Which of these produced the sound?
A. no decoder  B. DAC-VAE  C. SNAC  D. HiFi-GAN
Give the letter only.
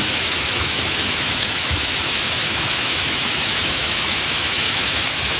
B